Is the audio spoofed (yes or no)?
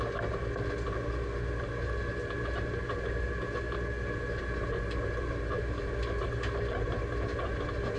no